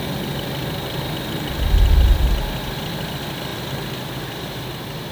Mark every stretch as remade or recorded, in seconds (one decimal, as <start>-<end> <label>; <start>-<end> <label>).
0.0-5.1 recorded